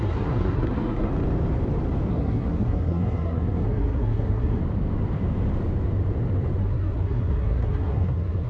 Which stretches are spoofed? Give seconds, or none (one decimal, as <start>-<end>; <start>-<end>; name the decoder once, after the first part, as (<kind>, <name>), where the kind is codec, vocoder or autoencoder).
0.0-1.1 (codec, SNAC); 2.1-4.6; 6.6-8.5